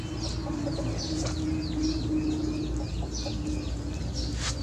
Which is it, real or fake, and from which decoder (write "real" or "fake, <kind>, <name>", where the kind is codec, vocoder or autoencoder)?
real